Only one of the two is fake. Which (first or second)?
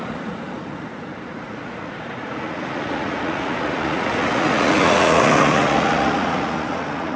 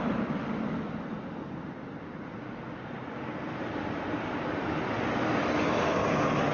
first